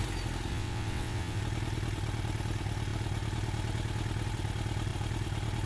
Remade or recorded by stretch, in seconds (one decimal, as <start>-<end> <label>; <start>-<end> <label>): 0.0-0.5 recorded; 0.5-1.4 remade; 1.4-5.7 recorded

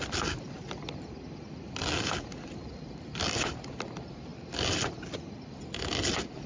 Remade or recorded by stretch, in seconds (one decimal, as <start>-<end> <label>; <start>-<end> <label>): 0.0-6.5 recorded

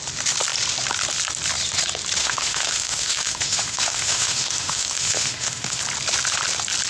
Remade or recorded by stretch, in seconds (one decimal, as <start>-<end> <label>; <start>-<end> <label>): 0.0-2.2 recorded; 2.2-5.8 remade; 5.8-6.9 recorded

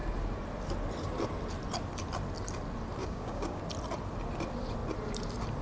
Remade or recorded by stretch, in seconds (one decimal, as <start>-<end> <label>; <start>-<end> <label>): 0.0-3.0 recorded; 3.0-3.6 remade; 3.6-5.6 recorded

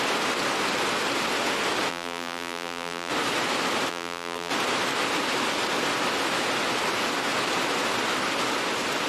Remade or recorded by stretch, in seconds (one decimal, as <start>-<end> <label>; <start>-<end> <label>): 0.0-1.9 recorded; 1.9-3.1 remade; 3.1-3.9 recorded; 3.9-4.5 remade; 4.5-9.1 recorded